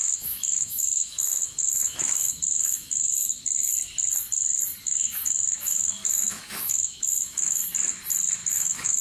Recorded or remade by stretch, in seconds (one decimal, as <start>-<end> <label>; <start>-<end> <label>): 0.0-3.7 remade; 3.7-4.8 recorded; 4.8-7.6 remade; 7.6-8.5 recorded; 8.5-9.0 remade